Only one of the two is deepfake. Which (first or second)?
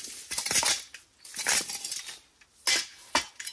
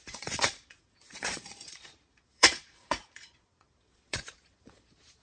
second